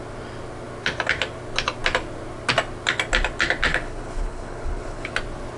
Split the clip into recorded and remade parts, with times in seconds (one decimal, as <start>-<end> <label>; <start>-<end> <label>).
0.0-3.7 recorded; 3.7-5.1 remade; 5.1-5.6 recorded